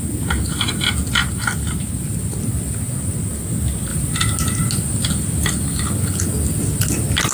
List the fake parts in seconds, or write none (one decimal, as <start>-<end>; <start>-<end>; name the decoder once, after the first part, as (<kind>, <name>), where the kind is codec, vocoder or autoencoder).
none